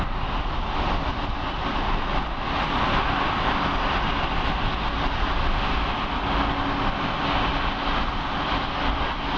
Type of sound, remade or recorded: recorded